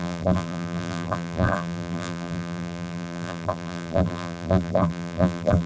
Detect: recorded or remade remade